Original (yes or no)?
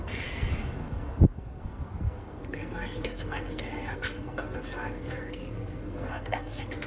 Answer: no